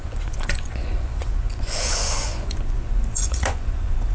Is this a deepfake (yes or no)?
yes